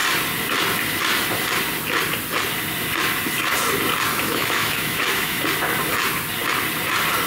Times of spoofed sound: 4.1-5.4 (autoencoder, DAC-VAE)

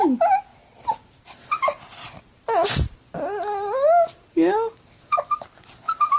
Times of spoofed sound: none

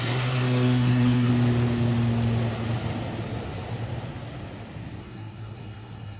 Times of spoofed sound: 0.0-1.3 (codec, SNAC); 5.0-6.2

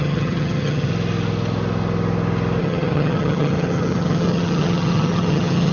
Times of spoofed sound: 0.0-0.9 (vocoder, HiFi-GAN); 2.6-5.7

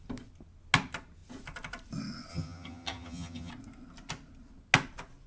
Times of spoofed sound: 2.3-3.5 (vocoder, HiFi-GAN)

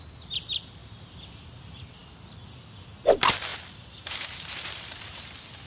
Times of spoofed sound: 3.5-5.3 (vocoder, BigVGAN v2)

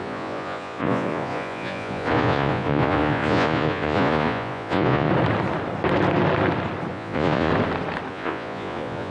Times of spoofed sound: 0.0-5.1 (vocoder, Vocos); 6.9-7.5; 8.1-9.1

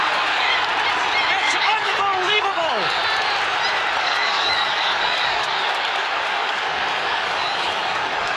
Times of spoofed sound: 0.0-0.5 (codec, DAC); 1.4-3.0; 4.0-8.4